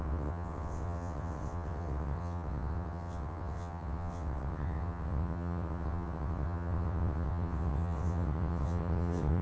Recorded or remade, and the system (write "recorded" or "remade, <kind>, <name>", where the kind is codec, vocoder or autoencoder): remade, vocoder, WaveNeXt